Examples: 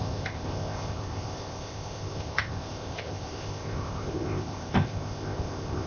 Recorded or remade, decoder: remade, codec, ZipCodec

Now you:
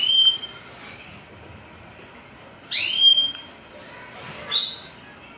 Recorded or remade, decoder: recorded